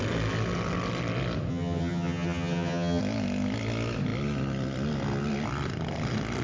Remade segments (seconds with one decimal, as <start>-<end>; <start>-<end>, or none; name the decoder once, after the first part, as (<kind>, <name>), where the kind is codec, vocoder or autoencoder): 1.5-3.0 (vocoder, HiFi-GAN)